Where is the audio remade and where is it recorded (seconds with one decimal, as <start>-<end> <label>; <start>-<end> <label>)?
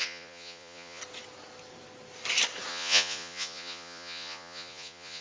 0.0-1.0 remade; 1.0-2.7 recorded; 2.7-5.2 remade